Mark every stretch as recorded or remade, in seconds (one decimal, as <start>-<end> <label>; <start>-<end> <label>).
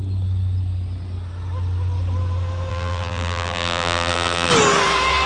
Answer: 0.0-2.7 recorded; 2.7-4.5 remade; 4.5-5.3 recorded